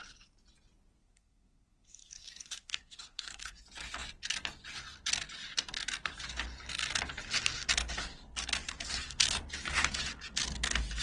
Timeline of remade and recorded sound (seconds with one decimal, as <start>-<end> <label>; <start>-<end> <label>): 0.0-1.0 recorded; 1.0-3.6 remade; 3.6-11.0 recorded